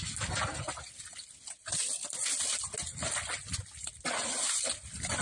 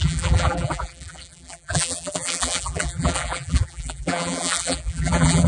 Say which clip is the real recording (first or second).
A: first